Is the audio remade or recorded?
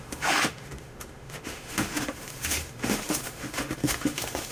remade